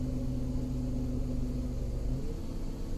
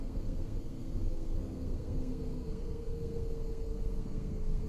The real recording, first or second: first